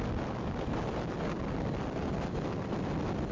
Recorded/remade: recorded